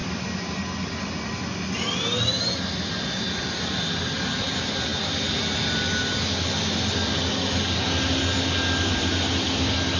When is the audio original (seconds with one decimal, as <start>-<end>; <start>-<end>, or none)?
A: 0.0-10.0